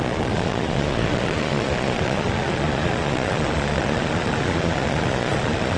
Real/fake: fake